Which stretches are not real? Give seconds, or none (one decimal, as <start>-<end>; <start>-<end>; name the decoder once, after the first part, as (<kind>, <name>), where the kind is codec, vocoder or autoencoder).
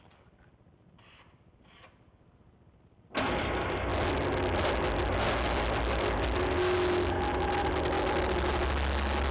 none